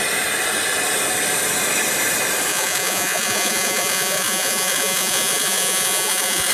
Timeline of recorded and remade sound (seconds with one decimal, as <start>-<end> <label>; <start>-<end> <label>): 0.0-2.5 recorded; 2.5-6.5 remade